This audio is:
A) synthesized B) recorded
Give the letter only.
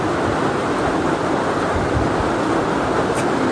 B